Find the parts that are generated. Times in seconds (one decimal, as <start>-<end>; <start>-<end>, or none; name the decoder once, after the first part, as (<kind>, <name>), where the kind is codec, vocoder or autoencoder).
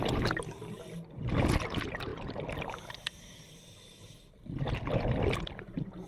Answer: none